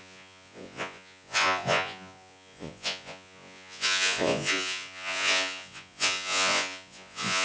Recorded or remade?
remade